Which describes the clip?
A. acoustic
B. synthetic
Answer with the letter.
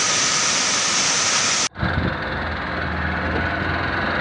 A